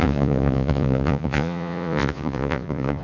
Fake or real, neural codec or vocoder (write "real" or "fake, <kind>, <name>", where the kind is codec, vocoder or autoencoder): fake, vocoder, Vocos